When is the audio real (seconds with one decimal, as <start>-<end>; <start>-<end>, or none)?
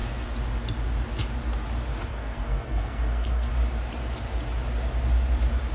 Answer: 0.0-2.1; 3.5-5.7